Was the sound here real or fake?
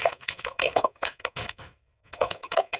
fake